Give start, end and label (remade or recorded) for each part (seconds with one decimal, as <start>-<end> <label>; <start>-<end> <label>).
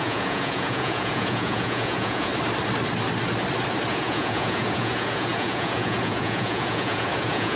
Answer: 0.0-2.3 remade; 2.3-3.9 recorded; 3.9-7.6 remade